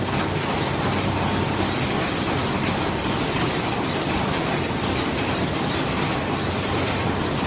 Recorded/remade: recorded